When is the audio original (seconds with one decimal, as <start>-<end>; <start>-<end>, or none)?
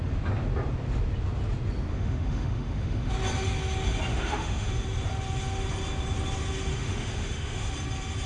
0.0-1.9; 3.1-4.1; 4.7-6.7; 7.7-8.3